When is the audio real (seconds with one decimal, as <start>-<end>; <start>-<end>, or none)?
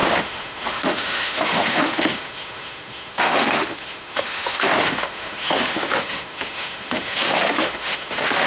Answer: none